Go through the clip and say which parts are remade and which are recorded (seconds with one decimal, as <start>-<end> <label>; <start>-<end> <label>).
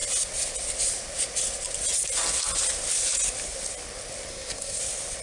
0.0-4.3 recorded; 4.3-4.8 remade; 4.8-5.2 recorded